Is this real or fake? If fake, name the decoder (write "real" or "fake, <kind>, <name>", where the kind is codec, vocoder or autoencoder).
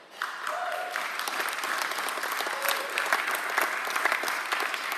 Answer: real